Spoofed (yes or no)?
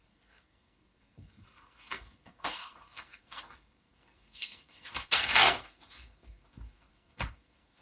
yes